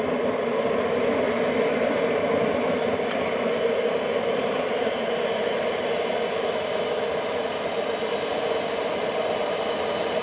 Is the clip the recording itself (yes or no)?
yes